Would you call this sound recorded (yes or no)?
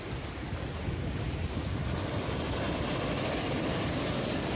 yes